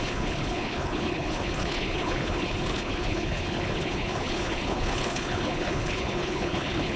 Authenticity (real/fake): fake